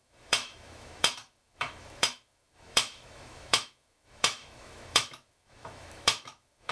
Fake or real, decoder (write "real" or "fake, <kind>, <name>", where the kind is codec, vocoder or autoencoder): fake, autoencoder, DAC-VAE